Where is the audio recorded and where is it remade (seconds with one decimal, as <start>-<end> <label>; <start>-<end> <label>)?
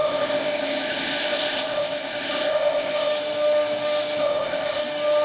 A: 0.0-3.1 remade; 3.1-4.2 recorded; 4.2-4.8 remade; 4.8-5.2 recorded